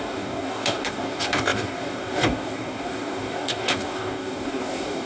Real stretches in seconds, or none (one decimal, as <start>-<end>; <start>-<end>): none